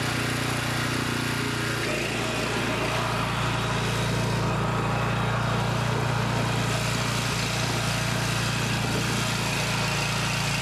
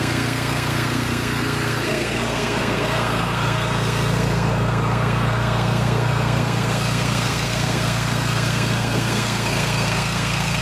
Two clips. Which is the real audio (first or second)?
first